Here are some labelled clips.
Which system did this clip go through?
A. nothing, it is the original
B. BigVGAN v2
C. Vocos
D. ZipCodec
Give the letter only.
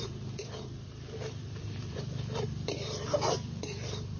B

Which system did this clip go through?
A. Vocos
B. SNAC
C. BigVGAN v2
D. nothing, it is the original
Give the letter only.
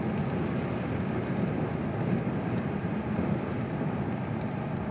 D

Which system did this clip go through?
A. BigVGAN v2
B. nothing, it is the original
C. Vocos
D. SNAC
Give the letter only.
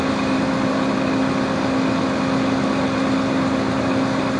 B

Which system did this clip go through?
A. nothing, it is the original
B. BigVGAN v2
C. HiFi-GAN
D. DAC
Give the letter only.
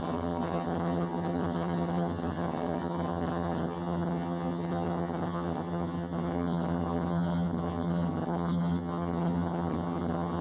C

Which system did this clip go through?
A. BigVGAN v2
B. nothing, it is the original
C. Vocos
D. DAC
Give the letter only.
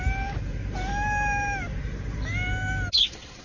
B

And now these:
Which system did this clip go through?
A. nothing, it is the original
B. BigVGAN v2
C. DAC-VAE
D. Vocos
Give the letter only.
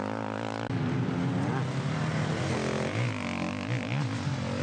A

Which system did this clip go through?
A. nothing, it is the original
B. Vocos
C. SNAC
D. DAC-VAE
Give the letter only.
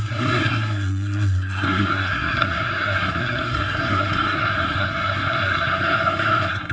C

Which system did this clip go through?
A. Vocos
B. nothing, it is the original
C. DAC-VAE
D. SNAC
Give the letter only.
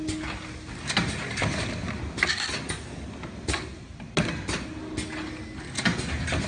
B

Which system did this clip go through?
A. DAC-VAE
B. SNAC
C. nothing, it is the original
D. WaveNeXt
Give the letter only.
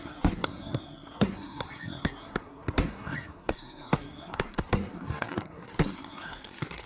B